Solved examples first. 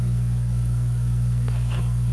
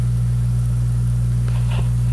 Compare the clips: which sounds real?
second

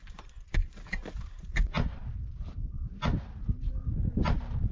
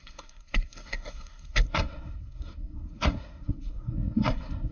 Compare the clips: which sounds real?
first